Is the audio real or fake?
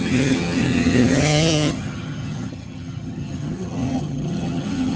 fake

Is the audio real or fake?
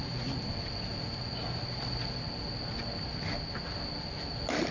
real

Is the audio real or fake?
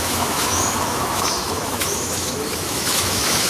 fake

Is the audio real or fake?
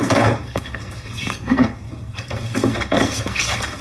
fake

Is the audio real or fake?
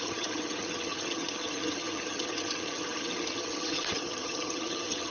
fake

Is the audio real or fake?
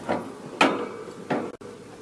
real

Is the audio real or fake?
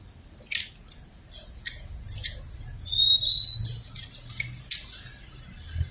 real